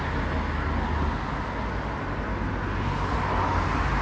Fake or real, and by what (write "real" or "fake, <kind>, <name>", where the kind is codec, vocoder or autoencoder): real